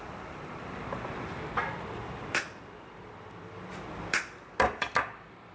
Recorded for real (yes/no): yes